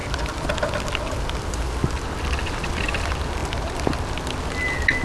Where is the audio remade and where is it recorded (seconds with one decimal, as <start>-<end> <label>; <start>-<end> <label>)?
0.0-5.0 recorded